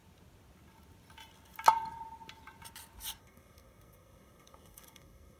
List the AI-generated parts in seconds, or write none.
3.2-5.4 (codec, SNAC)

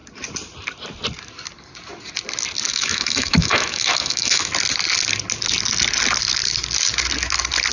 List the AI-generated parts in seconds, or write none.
2.7-4.5 (autoencoder, DAC-VAE)

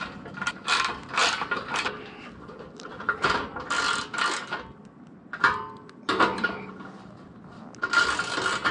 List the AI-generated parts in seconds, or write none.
none

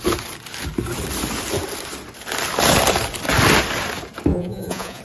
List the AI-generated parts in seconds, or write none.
4.3-5.0 (vocoder, Vocos)

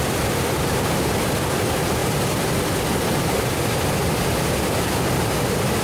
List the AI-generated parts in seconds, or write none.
none

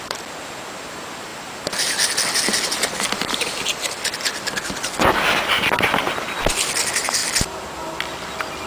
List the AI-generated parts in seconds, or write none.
none

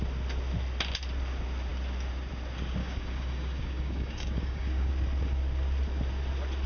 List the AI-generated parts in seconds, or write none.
2.8-4.9 (codec, DAC)